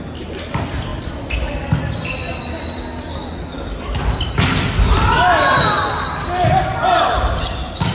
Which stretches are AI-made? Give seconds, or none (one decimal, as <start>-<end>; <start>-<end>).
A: none